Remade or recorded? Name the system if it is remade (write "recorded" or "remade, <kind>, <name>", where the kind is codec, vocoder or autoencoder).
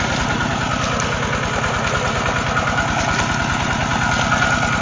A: recorded